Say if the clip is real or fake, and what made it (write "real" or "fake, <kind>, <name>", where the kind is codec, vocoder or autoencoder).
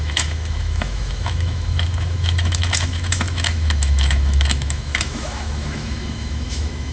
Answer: fake, autoencoder, DAC-VAE